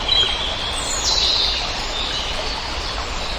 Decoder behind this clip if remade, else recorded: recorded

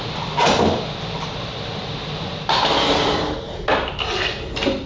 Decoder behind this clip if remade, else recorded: recorded